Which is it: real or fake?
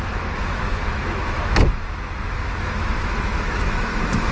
fake